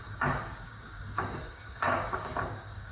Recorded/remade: remade